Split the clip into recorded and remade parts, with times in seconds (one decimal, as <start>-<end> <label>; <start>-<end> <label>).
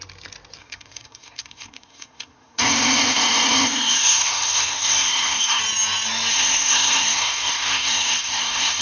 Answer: 0.0-0.6 recorded; 0.6-5.6 remade; 5.6-6.3 recorded; 6.3-8.8 remade